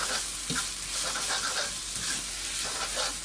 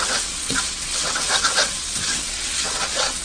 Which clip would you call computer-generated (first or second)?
second